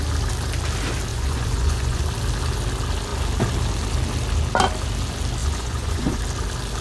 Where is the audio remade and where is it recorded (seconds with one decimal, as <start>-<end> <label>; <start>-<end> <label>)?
0.0-1.1 recorded; 1.1-2.0 remade; 2.0-5.4 recorded; 5.4-6.2 remade; 6.2-6.8 recorded